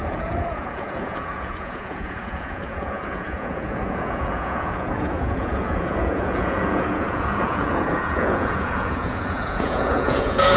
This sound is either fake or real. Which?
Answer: fake